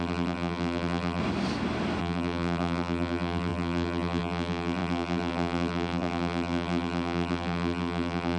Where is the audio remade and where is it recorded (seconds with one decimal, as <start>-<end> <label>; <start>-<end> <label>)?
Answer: 0.0-1.2 remade; 1.2-2.0 recorded; 2.0-8.4 remade